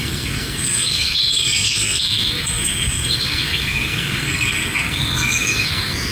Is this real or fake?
fake